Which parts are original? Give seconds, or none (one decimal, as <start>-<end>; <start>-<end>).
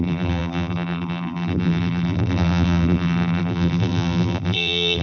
none